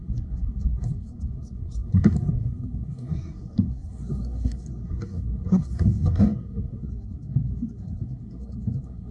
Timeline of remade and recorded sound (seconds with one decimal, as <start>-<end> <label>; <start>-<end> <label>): 0.0-9.1 remade